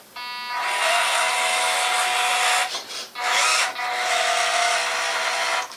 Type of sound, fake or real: real